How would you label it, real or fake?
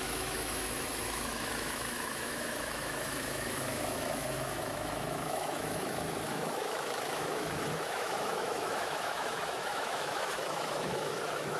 fake